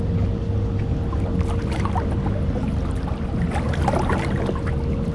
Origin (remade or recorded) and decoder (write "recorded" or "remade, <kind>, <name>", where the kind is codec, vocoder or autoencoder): recorded